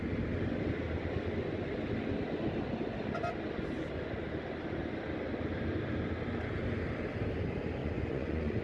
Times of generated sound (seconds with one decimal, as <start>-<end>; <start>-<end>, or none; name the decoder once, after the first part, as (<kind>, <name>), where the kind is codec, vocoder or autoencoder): 7.8-8.6 (vocoder, Vocos)